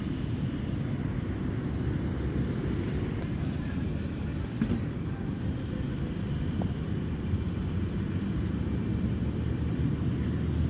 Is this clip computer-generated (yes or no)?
no